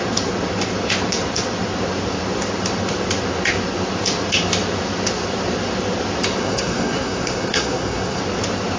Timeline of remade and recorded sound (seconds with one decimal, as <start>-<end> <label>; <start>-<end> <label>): 0.0-6.4 recorded; 6.4-8.2 remade; 8.2-8.8 recorded